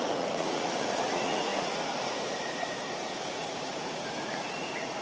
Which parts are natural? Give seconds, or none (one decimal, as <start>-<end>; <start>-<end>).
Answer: none